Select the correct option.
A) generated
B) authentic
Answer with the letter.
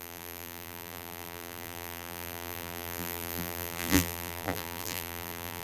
A